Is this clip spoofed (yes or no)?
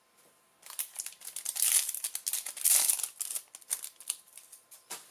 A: no